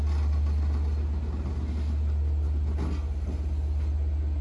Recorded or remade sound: recorded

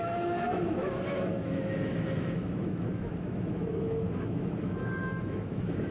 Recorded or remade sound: remade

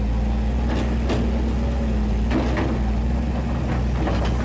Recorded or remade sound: recorded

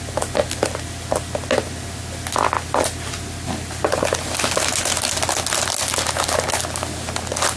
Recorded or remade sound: recorded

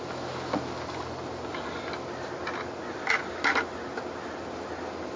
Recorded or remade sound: recorded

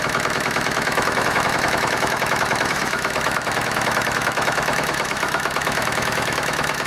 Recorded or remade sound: remade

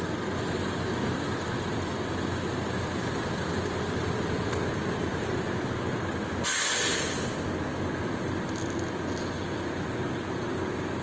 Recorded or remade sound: recorded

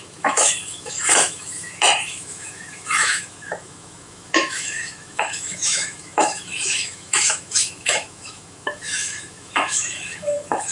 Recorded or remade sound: remade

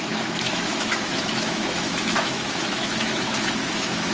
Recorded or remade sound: remade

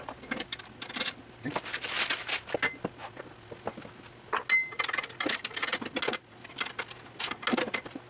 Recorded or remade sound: recorded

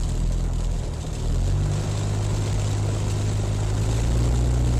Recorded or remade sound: recorded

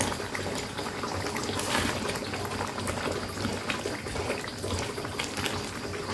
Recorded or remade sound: recorded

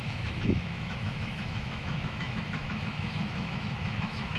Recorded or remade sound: remade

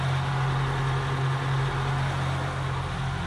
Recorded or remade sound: recorded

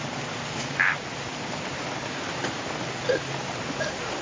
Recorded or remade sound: recorded